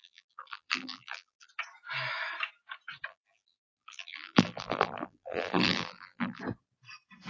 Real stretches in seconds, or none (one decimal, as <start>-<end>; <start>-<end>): 1.5-3.1; 6.4-7.3